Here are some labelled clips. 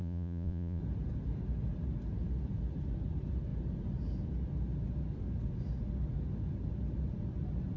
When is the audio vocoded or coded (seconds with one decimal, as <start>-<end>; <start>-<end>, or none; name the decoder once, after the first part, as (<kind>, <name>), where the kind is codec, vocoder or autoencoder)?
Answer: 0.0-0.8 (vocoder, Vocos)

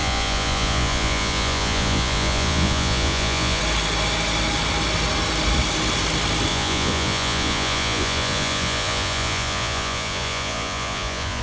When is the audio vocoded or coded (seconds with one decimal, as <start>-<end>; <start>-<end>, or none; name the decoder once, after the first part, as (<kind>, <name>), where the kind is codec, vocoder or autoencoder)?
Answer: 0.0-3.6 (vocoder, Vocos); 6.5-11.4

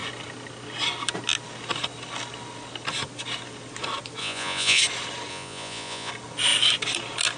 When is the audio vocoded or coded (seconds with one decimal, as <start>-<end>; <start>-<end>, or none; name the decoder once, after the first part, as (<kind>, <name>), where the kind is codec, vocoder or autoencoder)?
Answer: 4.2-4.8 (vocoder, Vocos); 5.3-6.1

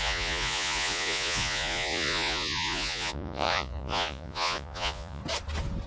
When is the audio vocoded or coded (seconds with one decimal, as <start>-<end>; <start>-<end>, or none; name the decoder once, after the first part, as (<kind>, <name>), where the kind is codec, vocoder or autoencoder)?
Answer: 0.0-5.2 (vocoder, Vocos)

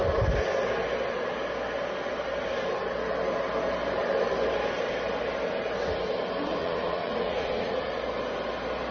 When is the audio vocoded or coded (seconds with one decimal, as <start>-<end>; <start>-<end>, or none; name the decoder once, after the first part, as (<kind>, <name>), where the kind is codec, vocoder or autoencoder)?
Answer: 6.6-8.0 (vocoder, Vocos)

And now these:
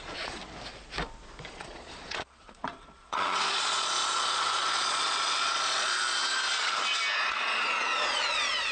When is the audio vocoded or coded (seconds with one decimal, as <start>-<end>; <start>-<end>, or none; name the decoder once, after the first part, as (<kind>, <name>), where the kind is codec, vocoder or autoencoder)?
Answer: 0.0-0.4 (vocoder, Vocos); 1.5-6.2; 7.2-8.7

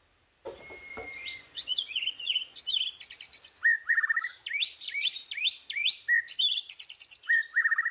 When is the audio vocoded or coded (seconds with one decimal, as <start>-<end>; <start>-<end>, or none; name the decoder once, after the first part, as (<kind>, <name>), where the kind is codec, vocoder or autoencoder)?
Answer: 0.9-2.6 (vocoder, Vocos)

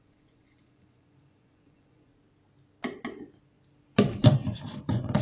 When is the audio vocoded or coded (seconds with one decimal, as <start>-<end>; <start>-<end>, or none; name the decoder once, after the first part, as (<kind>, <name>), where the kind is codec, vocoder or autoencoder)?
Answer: 0.0-2.1 (vocoder, Vocos); 4.8-5.2